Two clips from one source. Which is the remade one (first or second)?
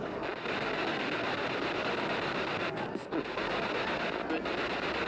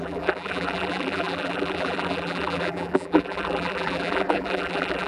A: second